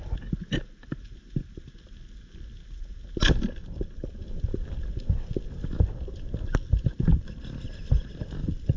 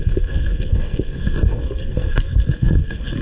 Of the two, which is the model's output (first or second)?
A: second